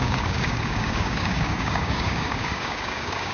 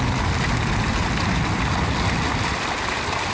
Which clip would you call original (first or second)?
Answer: second